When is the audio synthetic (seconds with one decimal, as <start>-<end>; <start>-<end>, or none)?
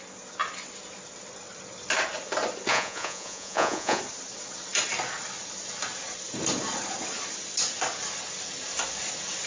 2.7-4.0